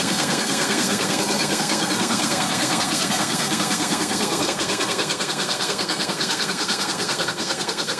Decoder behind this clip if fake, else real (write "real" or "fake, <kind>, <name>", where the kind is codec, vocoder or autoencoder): fake, codec, SNAC